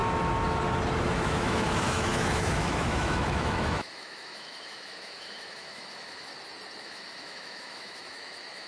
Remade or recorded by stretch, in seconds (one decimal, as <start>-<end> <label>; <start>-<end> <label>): 0.0-1.1 recorded; 1.1-6.3 remade; 6.3-6.8 recorded; 6.8-8.7 remade